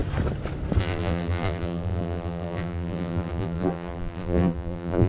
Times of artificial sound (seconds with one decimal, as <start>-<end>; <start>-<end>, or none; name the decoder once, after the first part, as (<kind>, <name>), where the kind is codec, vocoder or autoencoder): 0.8-5.1 (vocoder, BigVGAN v2)